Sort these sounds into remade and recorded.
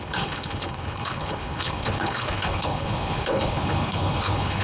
remade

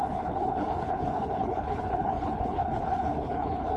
remade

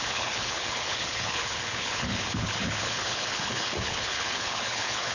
remade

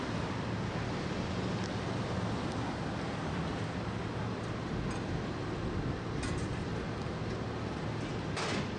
recorded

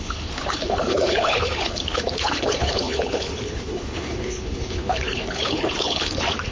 remade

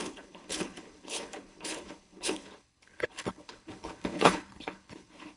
remade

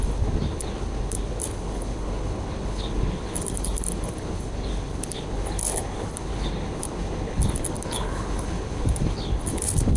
remade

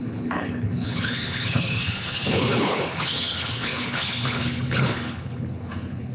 remade